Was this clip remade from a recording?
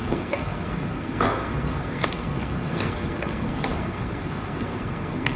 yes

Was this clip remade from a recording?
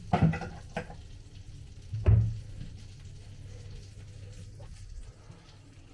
no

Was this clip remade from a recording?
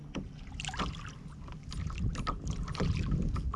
no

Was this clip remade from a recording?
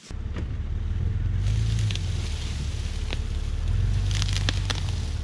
no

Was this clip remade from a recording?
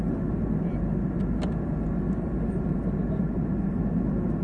no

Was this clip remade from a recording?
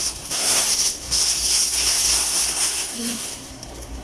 yes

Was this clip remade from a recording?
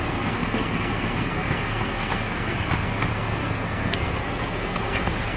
yes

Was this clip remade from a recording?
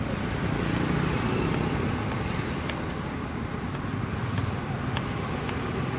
no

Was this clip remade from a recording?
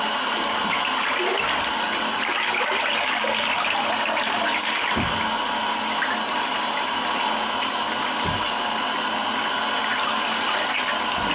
no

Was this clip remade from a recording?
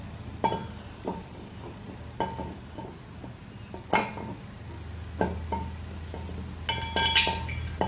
no